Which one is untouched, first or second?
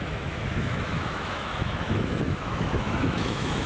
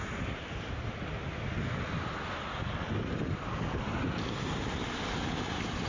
second